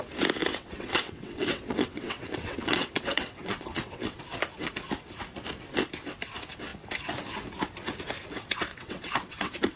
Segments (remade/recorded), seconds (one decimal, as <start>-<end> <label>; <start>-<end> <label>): 0.0-0.4 recorded; 0.4-4.2 remade; 4.2-8.7 recorded; 8.7-9.8 remade